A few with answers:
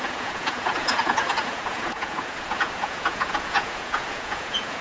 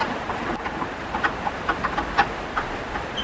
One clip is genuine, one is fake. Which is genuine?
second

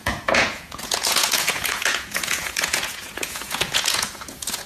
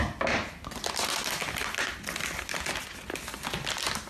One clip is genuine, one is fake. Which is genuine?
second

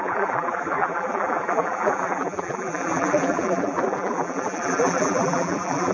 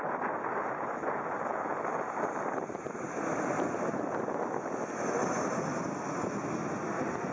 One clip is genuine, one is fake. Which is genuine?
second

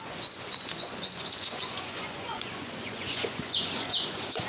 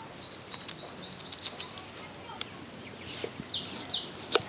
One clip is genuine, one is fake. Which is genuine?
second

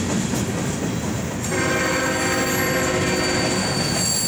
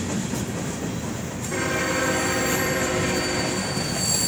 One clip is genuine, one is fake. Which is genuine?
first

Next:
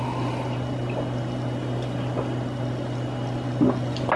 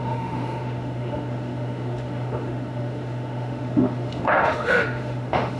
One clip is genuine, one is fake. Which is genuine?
first